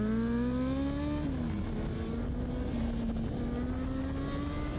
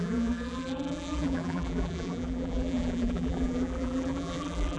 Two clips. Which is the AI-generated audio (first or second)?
second